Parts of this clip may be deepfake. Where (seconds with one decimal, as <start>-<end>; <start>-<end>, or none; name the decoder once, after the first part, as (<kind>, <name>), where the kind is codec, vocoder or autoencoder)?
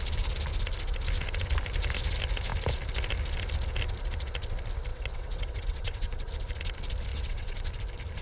4.9-6.3 (vocoder, WaveNeXt); 7.1-7.7